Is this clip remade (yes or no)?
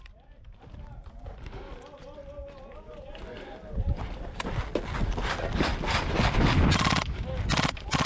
no